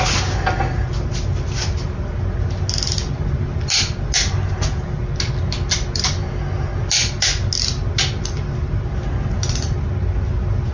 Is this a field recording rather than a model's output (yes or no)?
yes